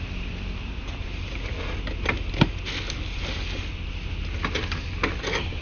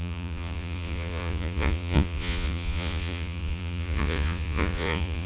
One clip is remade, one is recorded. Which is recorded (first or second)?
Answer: first